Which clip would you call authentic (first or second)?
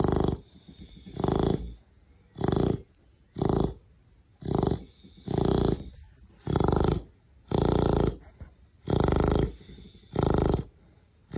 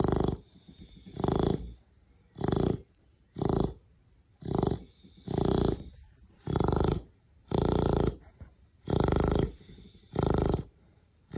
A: first